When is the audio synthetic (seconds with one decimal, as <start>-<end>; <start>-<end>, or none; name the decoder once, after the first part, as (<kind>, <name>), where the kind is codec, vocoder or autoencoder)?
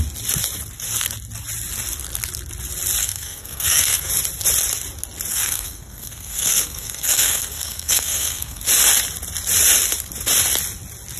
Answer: 3.0-4.1 (codec, SNAC); 5.3-8.6